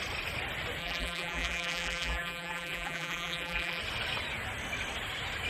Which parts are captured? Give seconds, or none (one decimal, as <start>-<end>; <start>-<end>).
0.0-0.8; 3.8-5.5